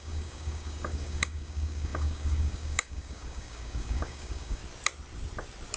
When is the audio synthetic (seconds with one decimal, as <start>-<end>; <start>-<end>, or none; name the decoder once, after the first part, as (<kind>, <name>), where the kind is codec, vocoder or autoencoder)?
0.0-4.6 (codec, DAC)

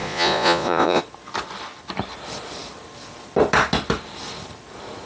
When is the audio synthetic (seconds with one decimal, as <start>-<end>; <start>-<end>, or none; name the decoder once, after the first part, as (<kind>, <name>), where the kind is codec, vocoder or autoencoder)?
0.0-1.0 (vocoder, Vocos)

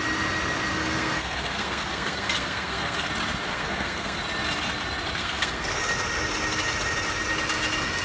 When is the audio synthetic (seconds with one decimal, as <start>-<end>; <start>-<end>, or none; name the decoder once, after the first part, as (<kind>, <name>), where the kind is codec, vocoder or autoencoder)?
0.7-3.1 (codec, SNAC); 3.5-4.2; 5.2-5.8

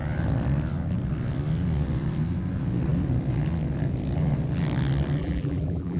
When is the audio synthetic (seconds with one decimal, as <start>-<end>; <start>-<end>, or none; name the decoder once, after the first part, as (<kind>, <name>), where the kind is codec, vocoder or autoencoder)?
5.2-6.0 (vocoder, BigVGAN v2)

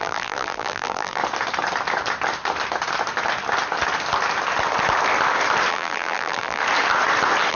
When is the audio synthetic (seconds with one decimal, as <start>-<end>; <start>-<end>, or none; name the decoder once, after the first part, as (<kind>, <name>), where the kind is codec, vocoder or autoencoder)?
0.0-1.2 (vocoder, BigVGAN v2); 5.7-6.6

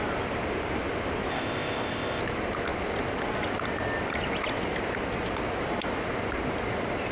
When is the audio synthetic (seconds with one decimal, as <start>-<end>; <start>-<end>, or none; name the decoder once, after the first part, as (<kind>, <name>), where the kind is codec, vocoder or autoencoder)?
1.3-2.2 (codec, ZipCodec)

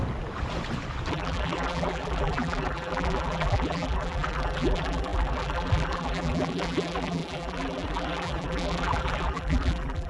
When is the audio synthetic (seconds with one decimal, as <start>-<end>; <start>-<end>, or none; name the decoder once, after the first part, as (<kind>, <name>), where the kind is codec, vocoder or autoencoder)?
1.1-10.1 (vocoder, BigVGAN v2)

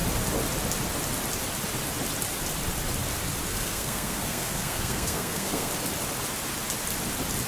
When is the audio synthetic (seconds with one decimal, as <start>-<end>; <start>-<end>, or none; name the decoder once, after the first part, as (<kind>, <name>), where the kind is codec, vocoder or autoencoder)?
3.5-5.7 (codec, SNAC)